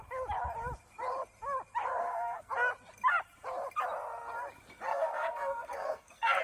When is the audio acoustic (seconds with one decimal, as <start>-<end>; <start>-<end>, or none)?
0.0-2.0; 2.5-4.9